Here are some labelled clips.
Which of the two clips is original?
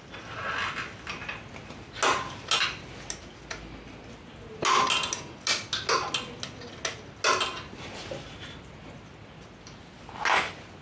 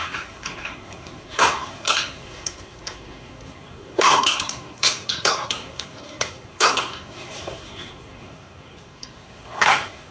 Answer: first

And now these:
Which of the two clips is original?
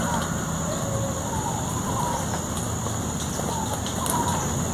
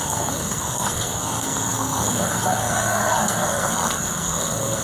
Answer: first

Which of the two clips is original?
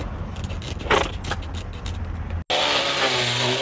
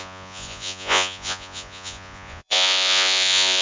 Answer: first